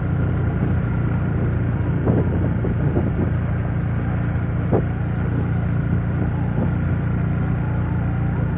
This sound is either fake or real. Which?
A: real